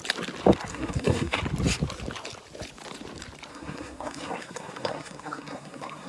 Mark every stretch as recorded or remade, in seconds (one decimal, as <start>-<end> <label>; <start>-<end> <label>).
0.0-0.7 recorded; 0.7-1.4 remade; 1.4-3.5 recorded; 3.5-6.1 remade